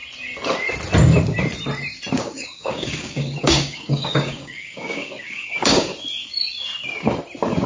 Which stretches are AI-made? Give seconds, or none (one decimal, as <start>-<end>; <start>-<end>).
2.2-5.9